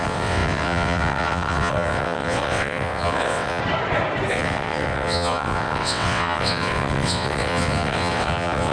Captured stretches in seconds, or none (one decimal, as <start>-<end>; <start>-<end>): 3.6-4.3